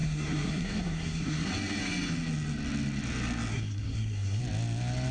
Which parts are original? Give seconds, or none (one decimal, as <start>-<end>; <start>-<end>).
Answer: 1.5-3.5; 4.4-5.1